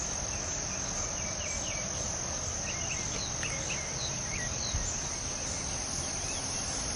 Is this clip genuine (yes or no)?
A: yes